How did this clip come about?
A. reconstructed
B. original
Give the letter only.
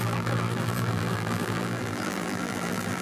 A